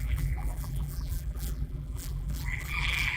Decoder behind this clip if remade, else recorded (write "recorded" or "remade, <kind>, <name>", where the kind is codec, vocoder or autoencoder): remade, vocoder, BigVGAN v2